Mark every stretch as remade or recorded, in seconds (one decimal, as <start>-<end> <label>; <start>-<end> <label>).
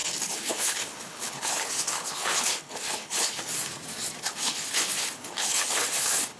0.0-3.5 remade; 3.5-4.2 recorded; 4.2-6.4 remade